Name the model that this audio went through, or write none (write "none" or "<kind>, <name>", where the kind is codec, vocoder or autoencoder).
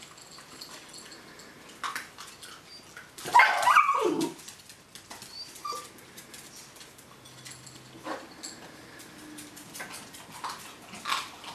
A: none